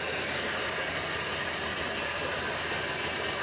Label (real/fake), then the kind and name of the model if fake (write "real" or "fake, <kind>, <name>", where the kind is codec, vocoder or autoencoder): real